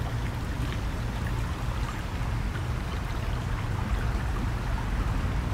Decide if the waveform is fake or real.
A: real